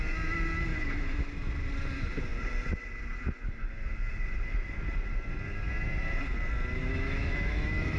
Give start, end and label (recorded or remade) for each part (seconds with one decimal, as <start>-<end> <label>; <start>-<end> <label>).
0.0-0.7 recorded; 0.7-1.3 remade; 1.3-6.8 recorded; 6.8-8.0 remade